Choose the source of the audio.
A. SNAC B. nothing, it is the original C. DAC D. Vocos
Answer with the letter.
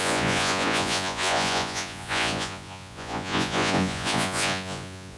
D